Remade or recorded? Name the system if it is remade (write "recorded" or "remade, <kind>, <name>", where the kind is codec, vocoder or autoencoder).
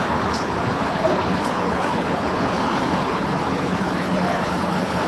remade, codec, HILCodec